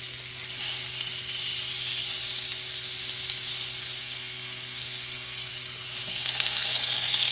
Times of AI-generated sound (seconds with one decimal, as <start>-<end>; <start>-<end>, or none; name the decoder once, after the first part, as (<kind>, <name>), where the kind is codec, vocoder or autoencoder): 4.0-5.5 (codec, SNAC); 6.1-7.3